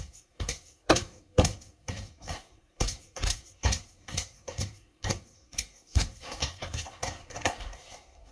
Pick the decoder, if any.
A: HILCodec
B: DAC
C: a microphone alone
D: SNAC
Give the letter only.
D